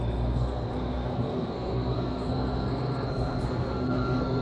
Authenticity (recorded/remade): remade